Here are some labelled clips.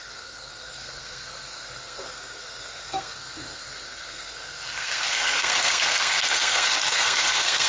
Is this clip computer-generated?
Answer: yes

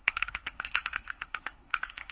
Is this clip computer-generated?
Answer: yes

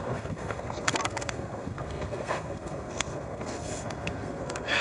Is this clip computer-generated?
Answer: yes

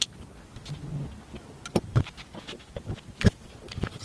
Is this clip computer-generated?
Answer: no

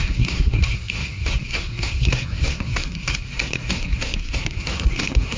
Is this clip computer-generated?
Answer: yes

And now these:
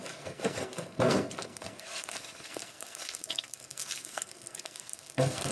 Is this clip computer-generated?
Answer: yes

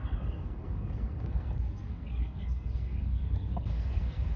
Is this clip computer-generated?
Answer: yes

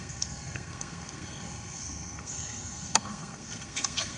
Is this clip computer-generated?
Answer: yes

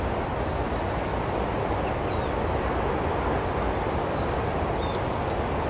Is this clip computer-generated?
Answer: no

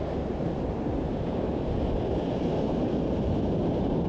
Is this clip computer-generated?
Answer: no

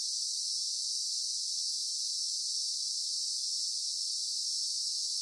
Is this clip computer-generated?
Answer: no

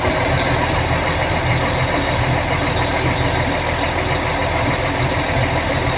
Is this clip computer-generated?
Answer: no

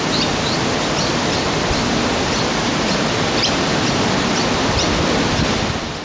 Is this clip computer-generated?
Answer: no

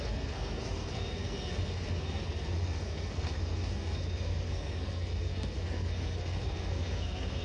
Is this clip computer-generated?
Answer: yes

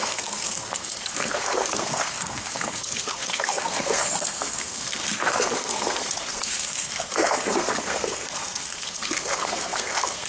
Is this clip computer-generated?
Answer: yes